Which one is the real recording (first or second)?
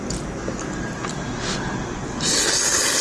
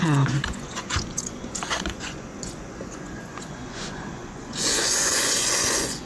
first